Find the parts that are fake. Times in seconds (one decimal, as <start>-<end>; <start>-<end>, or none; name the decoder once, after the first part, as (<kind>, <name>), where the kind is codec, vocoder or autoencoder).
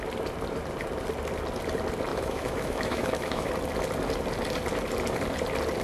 2.1-3.5 (autoencoder, DAC-VAE)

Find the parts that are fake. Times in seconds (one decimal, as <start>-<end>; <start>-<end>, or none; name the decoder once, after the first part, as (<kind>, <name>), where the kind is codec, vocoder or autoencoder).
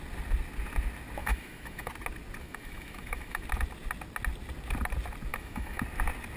1.2-1.9 (autoencoder, DAC-VAE); 2.4-3.4; 5.3-5.8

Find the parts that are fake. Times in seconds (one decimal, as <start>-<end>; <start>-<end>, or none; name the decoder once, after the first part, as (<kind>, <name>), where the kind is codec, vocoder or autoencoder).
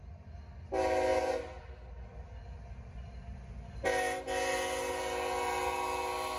none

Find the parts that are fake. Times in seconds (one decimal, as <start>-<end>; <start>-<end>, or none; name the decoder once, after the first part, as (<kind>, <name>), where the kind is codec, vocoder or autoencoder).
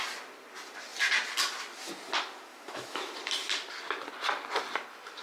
2.5-3.1 (autoencoder, DAC-VAE)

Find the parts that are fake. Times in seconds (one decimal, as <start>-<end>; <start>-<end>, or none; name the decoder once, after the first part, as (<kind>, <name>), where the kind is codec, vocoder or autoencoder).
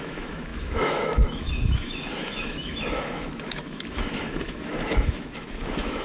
0.0-6.0 (autoencoder, DAC-VAE)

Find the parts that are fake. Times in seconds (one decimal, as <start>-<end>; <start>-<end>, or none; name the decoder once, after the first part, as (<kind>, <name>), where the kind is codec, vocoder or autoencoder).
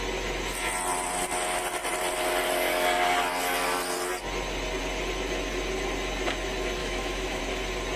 6.8-7.4 (autoencoder, DAC-VAE)